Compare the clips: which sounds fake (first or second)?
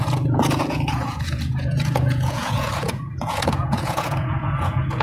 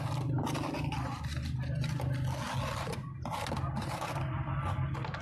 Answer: first